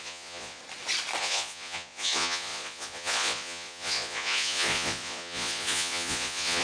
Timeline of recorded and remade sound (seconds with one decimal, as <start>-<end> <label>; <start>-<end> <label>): 0.0-0.6 remade; 0.6-1.2 recorded; 1.2-6.6 remade